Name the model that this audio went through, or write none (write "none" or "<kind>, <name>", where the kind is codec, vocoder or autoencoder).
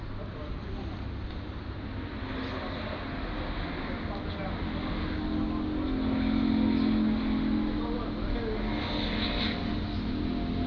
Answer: none